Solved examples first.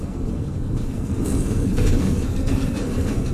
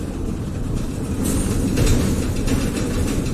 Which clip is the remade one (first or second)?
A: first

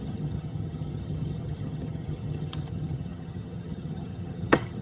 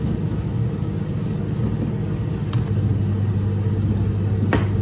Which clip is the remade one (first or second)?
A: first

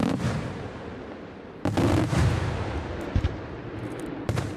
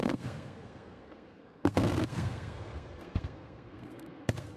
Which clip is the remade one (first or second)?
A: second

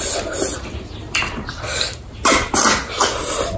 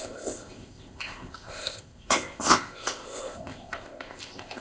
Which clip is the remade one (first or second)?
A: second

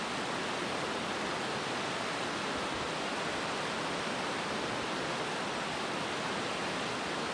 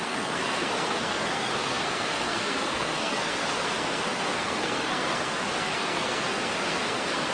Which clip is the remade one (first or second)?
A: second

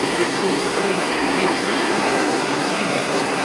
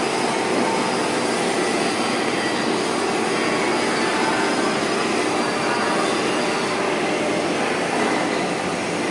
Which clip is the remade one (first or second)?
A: first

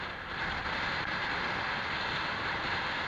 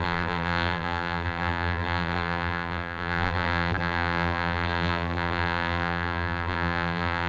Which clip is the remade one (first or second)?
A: second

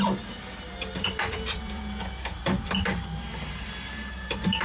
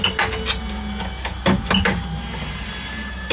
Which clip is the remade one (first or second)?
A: first